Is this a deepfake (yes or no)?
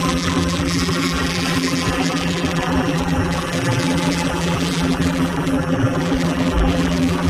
yes